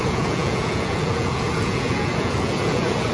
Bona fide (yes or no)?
no